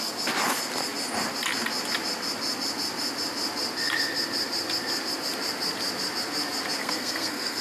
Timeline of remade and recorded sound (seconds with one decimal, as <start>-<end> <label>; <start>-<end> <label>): 0.0-6.8 recorded; 6.8-7.6 remade